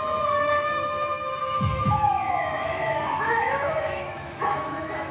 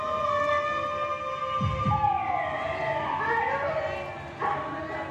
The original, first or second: second